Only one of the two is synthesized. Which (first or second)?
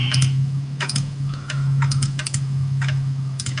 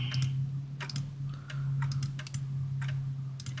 first